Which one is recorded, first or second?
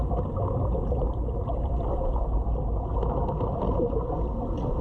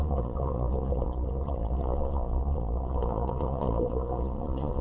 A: first